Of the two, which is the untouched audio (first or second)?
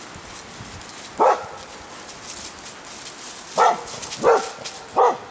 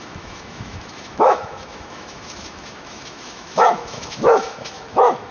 first